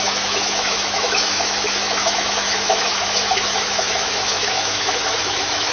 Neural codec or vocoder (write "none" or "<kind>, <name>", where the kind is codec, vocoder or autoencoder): autoencoder, DAC-VAE